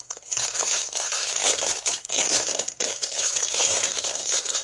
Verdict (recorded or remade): remade